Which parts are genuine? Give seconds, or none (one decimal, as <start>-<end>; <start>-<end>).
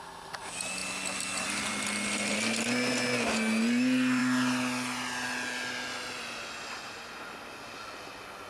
0.0-8.5